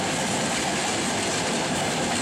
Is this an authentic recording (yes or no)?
yes